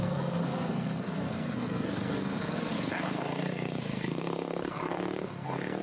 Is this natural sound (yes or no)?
no